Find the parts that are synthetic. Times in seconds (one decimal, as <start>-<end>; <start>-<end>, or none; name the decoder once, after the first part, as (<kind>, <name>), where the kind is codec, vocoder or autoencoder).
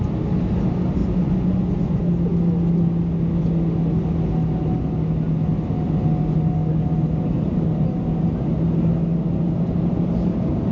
1.0-2.0 (vocoder, Vocos)